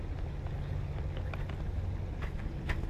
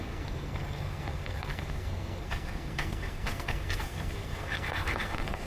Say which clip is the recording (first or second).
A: first